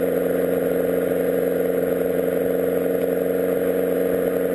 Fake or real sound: real